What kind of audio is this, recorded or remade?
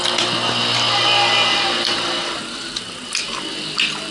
recorded